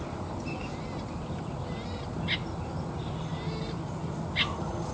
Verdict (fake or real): real